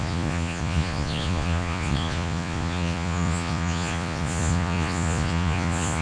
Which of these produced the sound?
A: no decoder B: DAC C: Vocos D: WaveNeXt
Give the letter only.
C